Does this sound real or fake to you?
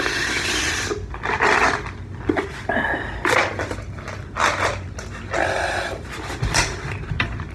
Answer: real